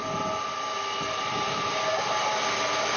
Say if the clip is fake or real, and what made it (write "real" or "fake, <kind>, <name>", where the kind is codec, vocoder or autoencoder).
real